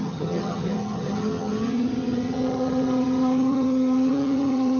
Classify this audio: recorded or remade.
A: remade